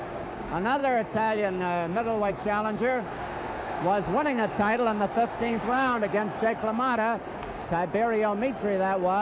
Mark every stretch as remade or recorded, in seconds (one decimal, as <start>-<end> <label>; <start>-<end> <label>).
0.0-7.6 remade; 7.6-9.2 recorded

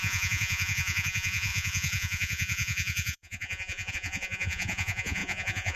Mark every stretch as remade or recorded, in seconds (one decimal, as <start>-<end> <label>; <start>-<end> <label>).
0.0-5.8 remade

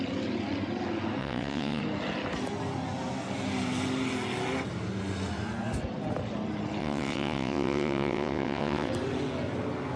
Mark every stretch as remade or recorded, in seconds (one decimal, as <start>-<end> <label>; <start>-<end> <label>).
0.0-1.2 recorded; 1.2-1.8 remade; 1.8-6.8 recorded; 6.8-8.9 remade; 8.9-10.0 recorded